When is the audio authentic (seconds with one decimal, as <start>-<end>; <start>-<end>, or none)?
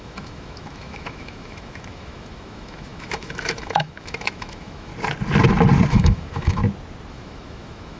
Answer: 4.9-5.9; 6.6-7.1